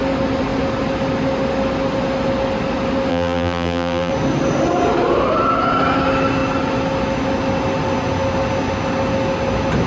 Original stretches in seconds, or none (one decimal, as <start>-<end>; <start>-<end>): 0.0-3.1; 4.1-9.9